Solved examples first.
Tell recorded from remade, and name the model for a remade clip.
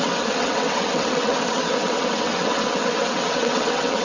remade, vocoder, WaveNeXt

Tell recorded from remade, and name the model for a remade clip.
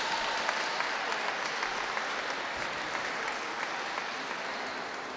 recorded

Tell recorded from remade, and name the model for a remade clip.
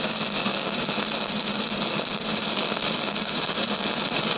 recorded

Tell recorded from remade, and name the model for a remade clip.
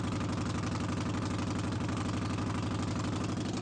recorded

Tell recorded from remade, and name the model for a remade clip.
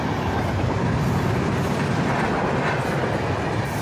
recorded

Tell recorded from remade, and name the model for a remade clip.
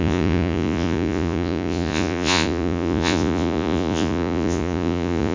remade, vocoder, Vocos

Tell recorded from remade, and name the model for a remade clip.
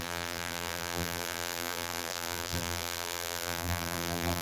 remade, vocoder, BigVGAN v2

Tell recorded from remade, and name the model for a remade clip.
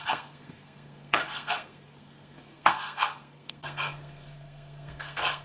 remade, codec, SNAC